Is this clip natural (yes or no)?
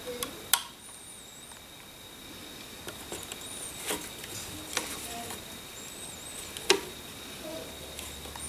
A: yes